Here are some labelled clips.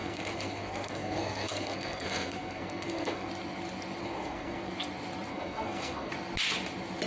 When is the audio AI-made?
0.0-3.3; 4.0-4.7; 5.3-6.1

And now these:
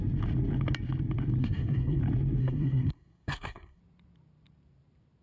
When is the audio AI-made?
1.4-2.0; 2.4-3.8

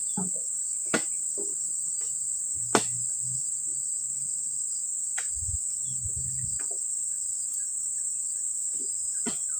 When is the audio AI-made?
none

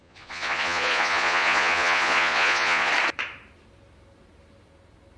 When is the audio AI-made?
0.0-2.9